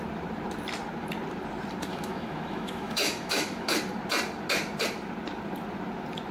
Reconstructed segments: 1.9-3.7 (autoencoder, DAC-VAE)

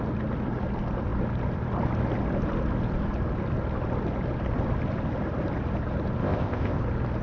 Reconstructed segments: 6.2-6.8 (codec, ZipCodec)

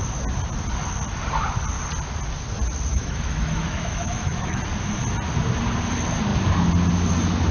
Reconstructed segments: 2.9-4.6 (autoencoder, DAC-VAE)